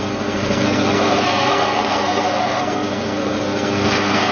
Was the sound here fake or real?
fake